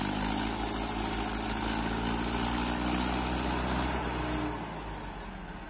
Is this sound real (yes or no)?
yes